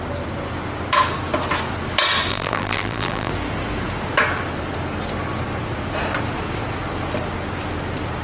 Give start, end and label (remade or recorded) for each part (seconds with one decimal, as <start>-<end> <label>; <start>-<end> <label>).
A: 0.0-2.3 recorded; 2.3-3.3 remade; 3.3-8.2 recorded